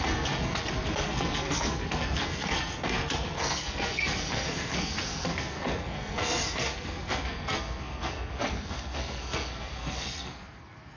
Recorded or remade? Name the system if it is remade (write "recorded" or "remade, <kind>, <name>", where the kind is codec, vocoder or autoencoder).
remade, codec, SNAC